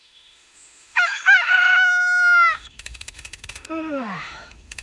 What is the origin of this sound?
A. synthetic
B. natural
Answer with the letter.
A